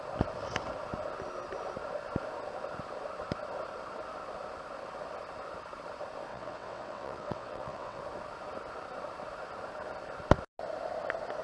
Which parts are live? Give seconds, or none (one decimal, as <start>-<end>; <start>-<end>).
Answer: 0.0-6.3; 8.0-11.4

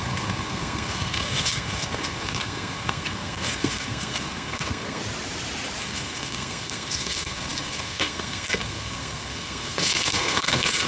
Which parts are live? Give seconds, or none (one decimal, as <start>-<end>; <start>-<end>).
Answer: 5.0-5.8

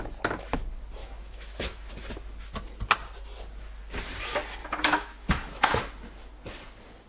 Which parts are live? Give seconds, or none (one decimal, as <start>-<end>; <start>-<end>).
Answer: 0.0-1.0; 1.9-4.6; 5.8-7.1

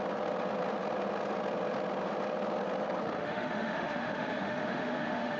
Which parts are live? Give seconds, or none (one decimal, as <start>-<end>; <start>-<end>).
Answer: 0.0-3.2

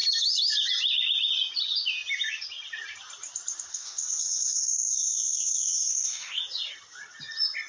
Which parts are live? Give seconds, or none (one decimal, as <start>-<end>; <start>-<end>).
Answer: 0.0-3.7; 6.4-7.7

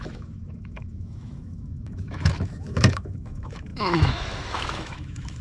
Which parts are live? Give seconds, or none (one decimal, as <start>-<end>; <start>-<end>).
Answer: none

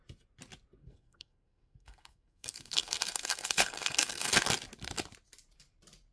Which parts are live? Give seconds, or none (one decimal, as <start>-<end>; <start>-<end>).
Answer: 0.0-0.8; 4.3-6.1